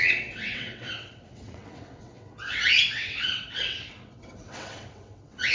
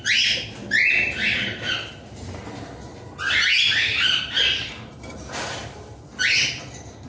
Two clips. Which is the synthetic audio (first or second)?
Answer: first